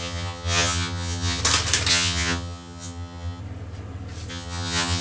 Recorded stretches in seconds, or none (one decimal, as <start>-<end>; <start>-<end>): 1.4-1.9; 3.4-4.3